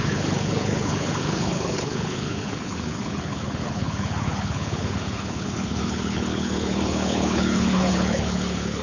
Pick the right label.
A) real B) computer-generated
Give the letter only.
B